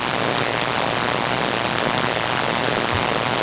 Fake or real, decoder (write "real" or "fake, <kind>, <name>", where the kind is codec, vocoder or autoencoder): real